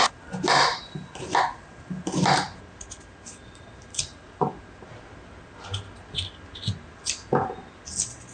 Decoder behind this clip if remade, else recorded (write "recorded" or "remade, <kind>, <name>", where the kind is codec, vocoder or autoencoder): recorded